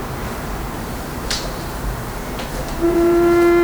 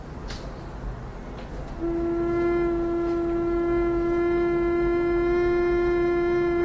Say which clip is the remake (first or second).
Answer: first